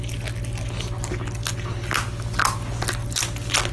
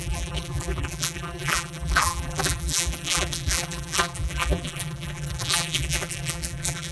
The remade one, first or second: second